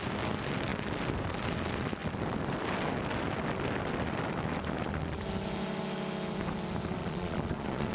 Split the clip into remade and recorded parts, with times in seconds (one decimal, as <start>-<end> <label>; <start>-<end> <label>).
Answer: 0.0-7.0 recorded; 7.0-7.9 remade